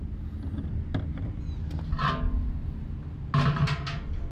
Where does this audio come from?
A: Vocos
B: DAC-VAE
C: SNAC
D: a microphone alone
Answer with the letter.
D